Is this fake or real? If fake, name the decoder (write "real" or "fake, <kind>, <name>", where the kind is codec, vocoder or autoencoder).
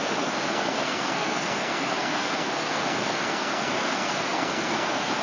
fake, codec, SNAC